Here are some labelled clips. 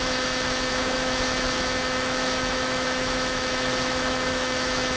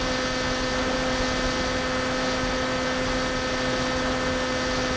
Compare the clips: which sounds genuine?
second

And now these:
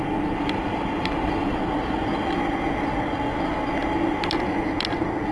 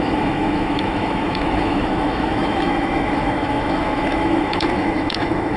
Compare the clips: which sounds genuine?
first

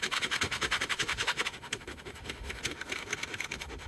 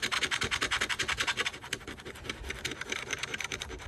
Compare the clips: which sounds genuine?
second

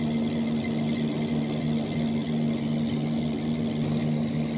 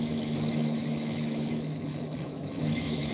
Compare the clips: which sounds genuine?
first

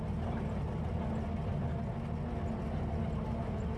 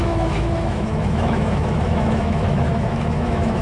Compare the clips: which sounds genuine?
first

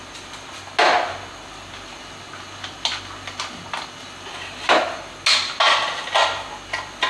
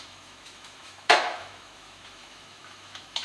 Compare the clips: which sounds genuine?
first